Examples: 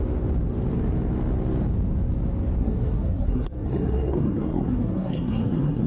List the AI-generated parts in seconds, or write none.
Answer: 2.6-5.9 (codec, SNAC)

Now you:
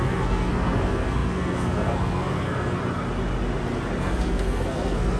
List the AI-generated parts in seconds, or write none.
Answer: 0.0-2.8 (codec, SNAC); 4.0-5.2

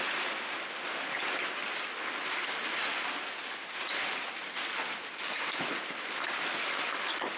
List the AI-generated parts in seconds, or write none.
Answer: none

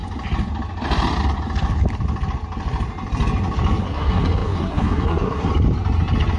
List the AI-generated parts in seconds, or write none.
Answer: 3.8-5.5 (codec, SNAC)